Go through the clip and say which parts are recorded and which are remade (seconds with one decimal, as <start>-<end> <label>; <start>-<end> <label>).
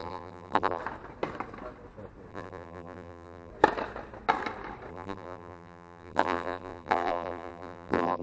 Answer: 0.0-0.8 remade; 0.8-2.3 recorded; 2.3-3.5 remade; 3.5-4.9 recorded; 4.9-8.2 remade